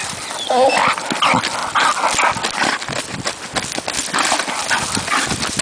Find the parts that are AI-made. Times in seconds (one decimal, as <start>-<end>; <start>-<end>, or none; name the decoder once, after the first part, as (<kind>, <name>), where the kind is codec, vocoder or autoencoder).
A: none